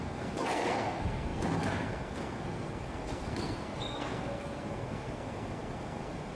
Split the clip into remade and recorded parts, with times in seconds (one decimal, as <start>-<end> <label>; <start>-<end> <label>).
0.0-6.3 remade